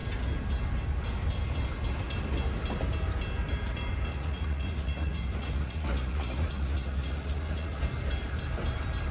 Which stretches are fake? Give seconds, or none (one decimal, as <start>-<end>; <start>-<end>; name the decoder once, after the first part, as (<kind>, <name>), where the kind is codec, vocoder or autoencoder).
4.1-7.8 (vocoder, Vocos)